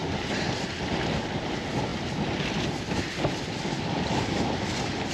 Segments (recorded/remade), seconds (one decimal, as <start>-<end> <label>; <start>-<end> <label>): 0.0-0.7 remade; 0.7-5.1 recorded